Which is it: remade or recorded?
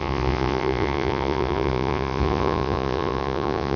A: remade